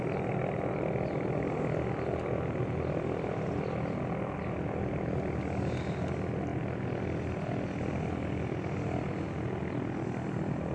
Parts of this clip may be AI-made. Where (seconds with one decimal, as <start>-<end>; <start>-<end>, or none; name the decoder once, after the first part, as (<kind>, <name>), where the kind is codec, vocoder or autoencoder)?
none

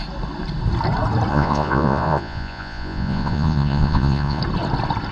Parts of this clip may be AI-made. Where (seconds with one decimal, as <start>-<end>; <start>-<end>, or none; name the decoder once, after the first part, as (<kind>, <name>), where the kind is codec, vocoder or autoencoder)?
1.3-4.4 (vocoder, Vocos)